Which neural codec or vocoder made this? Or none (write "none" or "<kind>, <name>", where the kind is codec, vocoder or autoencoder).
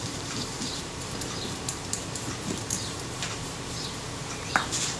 vocoder, BigVGAN v2